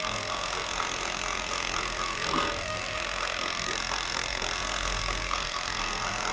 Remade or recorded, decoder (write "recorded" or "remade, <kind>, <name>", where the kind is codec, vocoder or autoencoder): remade, codec, SNAC